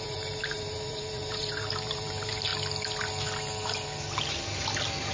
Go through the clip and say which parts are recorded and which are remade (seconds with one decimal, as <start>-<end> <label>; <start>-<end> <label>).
0.0-2.5 remade; 2.5-5.1 recorded